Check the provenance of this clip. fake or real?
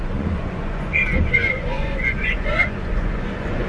fake